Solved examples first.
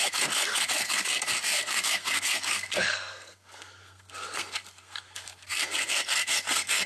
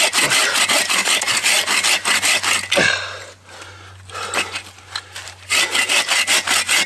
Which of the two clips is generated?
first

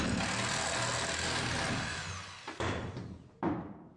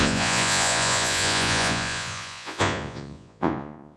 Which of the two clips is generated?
second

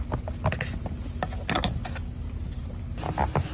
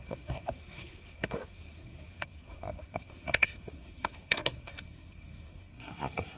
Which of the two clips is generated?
second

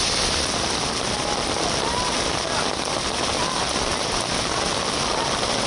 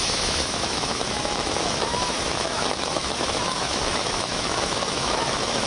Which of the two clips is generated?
second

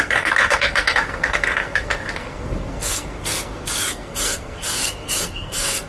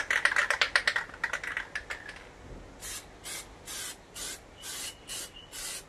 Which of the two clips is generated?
first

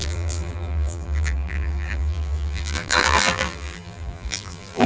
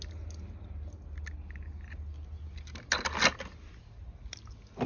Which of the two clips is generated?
first